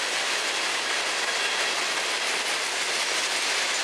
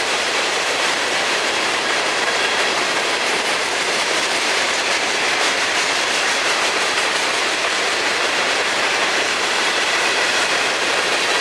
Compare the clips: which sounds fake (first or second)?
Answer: second